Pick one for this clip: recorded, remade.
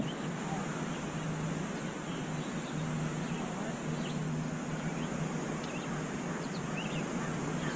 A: recorded